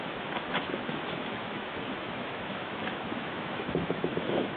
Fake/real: fake